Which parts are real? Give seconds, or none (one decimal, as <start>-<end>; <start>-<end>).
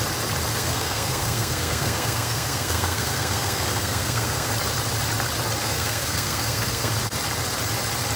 0.0-0.5; 4.5-5.6; 6.9-8.2